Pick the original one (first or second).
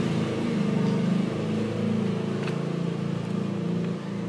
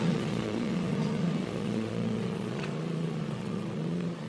first